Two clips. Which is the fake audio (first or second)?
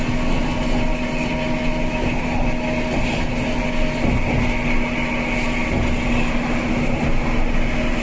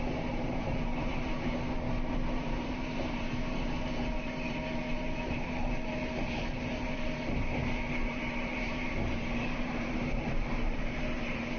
second